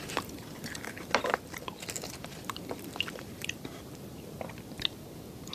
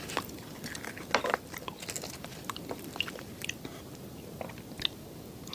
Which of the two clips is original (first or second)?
second